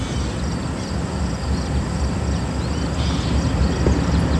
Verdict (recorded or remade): recorded